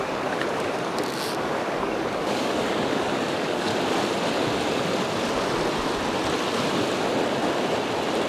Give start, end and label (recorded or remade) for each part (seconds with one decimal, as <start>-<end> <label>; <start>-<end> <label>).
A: 0.0-3.7 remade; 3.7-8.3 recorded